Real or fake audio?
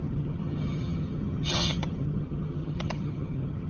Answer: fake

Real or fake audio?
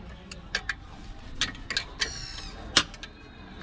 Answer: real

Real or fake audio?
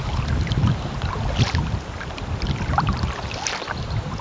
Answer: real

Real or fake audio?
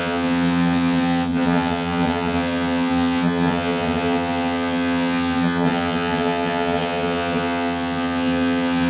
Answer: fake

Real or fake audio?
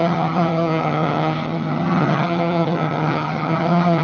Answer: fake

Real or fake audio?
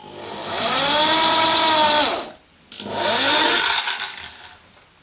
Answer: real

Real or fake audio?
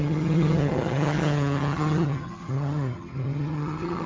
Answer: fake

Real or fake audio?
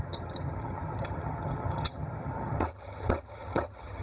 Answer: fake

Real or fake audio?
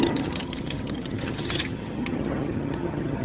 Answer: fake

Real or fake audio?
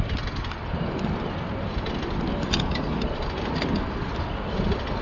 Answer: real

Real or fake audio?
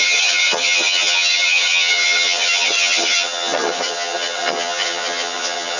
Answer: fake